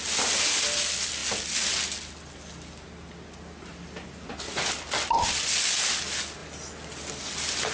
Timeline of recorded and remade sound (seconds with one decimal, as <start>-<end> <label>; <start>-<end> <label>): 0.0-7.7 recorded